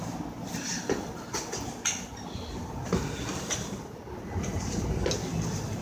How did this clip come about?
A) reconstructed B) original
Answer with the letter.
B